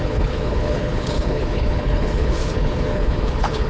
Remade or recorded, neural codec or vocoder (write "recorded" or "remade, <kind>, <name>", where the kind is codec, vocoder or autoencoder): remade, codec, HILCodec